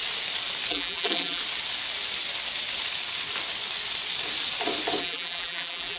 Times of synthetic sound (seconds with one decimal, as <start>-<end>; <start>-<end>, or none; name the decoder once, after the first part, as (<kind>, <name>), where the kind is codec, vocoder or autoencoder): 0.7-1.4 (vocoder, BigVGAN v2); 5.0-6.0